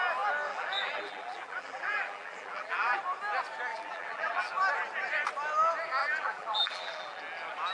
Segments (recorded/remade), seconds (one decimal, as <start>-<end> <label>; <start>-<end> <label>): 0.0-0.5 recorded; 0.5-3.0 remade; 3.0-3.7 recorded; 3.7-4.5 remade; 4.5-6.0 recorded; 6.0-7.2 remade; 7.2-7.7 recorded